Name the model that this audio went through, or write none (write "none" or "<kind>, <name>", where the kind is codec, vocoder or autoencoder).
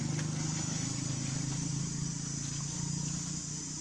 none